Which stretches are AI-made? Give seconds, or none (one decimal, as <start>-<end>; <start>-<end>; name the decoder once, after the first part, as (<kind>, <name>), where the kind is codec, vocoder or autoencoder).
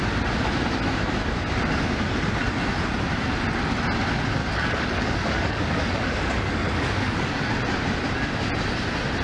4.4-7.4 (codec, DAC)